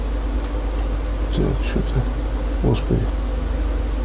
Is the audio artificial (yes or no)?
no